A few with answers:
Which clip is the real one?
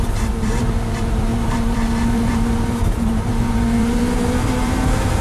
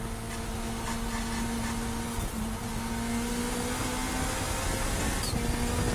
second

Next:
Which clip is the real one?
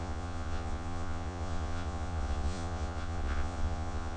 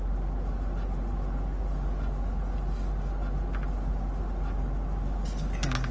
second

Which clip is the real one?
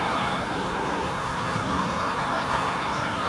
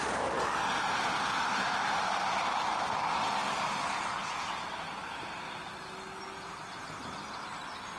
second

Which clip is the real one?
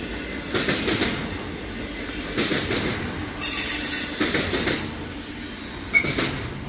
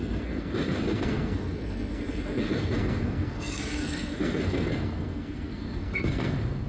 first